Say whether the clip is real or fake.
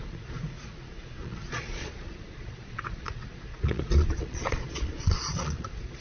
fake